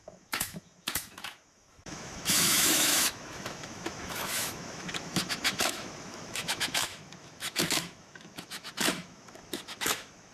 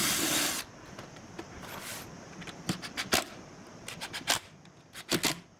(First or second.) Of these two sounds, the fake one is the first